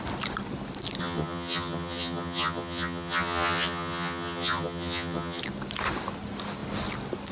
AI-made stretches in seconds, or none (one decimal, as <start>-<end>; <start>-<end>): 1.0-5.4

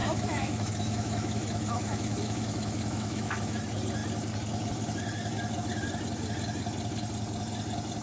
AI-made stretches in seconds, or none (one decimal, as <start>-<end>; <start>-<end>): 0.0-3.6

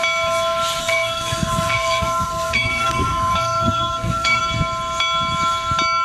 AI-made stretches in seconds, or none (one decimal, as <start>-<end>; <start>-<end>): 0.8-4.4